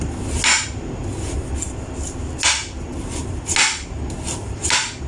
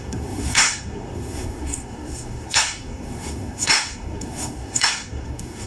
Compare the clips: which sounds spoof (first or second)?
second